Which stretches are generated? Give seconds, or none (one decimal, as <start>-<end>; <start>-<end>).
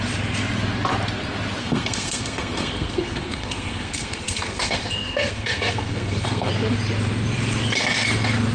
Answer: 1.6-6.5